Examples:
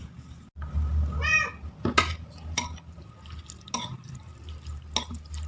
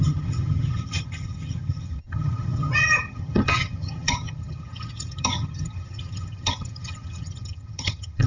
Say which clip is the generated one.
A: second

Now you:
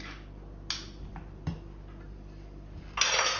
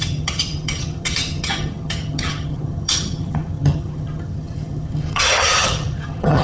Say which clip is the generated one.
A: second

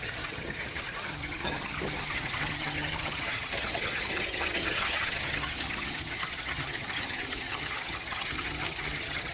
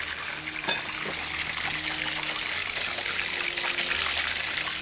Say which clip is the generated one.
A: first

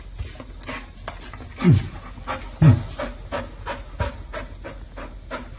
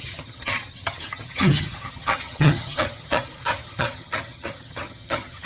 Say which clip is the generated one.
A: second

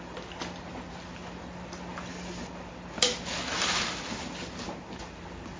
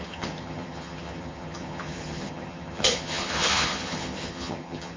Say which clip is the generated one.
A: second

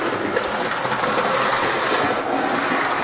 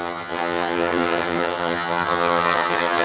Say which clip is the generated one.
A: second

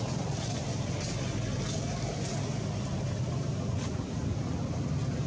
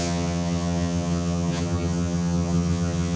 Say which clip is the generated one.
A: second